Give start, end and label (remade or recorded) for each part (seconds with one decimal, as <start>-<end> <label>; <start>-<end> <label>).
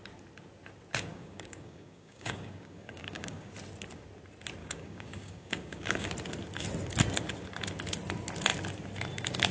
0.0-1.1 recorded; 1.1-3.5 remade; 3.5-4.6 recorded; 4.6-6.1 remade; 6.1-9.5 recorded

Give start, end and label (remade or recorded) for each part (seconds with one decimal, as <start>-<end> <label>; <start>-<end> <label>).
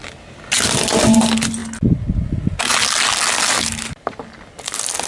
0.0-5.1 recorded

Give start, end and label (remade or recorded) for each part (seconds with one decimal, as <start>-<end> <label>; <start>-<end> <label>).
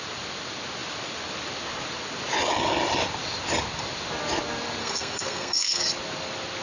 0.0-4.8 recorded; 4.8-5.8 remade; 5.8-6.6 recorded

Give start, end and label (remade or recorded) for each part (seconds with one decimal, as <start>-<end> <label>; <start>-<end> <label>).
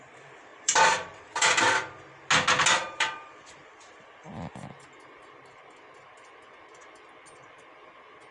0.0-0.5 recorded; 0.5-1.6 remade; 1.6-2.8 recorded; 2.8-4.1 remade; 4.1-8.3 recorded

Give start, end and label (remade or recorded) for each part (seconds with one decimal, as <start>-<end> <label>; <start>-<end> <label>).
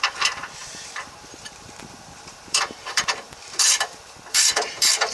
0.0-5.1 remade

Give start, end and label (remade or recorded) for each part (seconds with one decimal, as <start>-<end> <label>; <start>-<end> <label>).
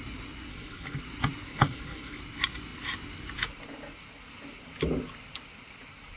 0.0-0.5 recorded; 0.5-1.0 remade; 1.0-1.5 recorded; 1.5-2.2 remade; 2.2-6.2 recorded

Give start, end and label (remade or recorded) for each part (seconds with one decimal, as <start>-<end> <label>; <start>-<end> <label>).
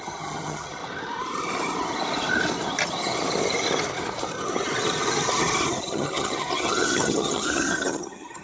0.0-0.8 remade; 0.8-5.8 recorded; 5.8-8.4 remade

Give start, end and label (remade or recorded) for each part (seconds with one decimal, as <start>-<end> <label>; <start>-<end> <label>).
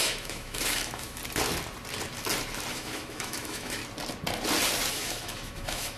0.0-1.2 remade; 1.2-2.7 recorded; 2.7-3.8 remade; 3.8-4.9 recorded; 4.9-6.0 remade